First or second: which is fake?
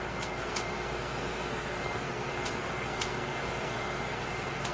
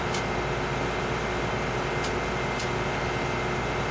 first